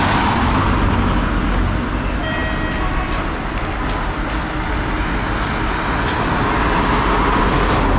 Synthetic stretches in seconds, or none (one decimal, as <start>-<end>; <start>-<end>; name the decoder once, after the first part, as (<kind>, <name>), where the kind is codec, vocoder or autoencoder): none